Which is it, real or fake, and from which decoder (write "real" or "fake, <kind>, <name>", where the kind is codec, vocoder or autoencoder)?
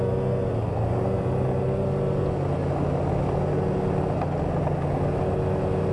real